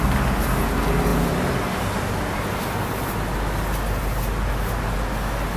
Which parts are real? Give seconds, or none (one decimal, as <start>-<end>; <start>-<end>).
0.0-5.6